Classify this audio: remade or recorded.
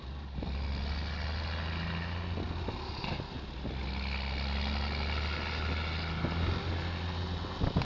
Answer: recorded